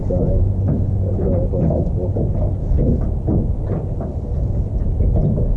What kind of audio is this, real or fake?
real